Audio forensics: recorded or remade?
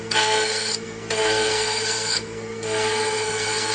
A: remade